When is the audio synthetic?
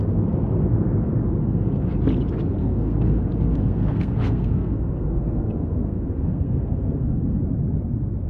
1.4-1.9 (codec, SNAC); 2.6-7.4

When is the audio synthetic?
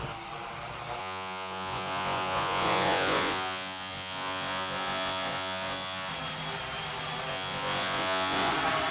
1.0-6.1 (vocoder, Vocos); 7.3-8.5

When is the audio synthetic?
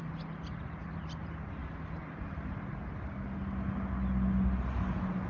none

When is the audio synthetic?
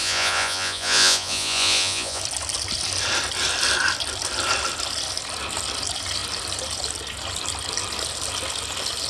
0.0-2.2 (vocoder, Vocos)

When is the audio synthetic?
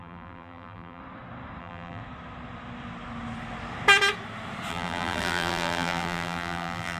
0.0-1.0 (vocoder, BigVGAN v2); 1.6-2.0; 4.7-7.0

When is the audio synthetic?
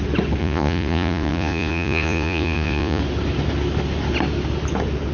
0.4-3.0 (vocoder, Vocos)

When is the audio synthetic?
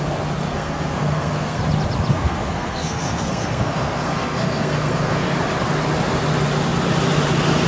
0.4-1.6 (codec, SNAC); 2.1-5.3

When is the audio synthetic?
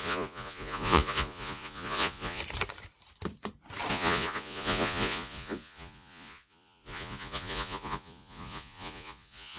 0.0-2.4 (vocoder, Vocos); 3.9-9.6